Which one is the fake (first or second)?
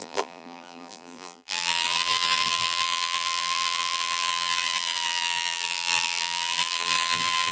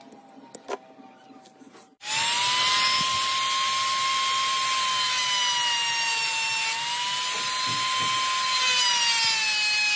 first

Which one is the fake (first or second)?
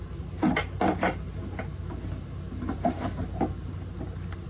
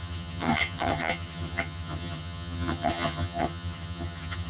second